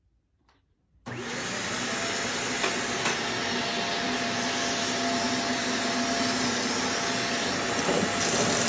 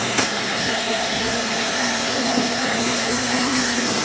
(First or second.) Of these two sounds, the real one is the first